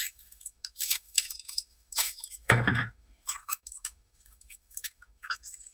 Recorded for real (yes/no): no